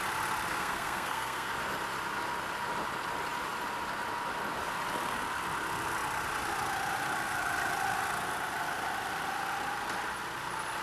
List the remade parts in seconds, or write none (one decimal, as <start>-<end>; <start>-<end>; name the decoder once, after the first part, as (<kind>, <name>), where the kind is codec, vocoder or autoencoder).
0.5-1.5 (codec, SNAC)